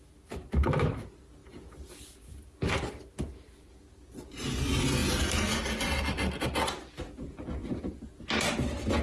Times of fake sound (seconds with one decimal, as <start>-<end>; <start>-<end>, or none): 7.6-8.1